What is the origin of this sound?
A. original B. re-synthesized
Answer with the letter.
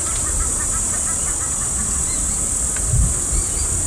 A